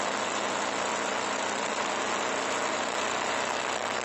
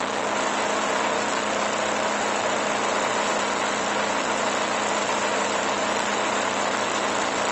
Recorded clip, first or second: second